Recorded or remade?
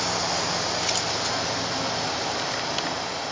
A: recorded